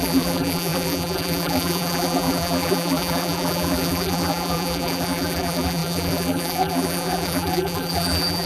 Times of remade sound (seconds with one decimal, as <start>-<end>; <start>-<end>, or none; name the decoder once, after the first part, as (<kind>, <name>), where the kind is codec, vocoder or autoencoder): 0.0-8.5 (vocoder, BigVGAN v2)